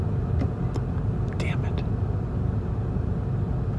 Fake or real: real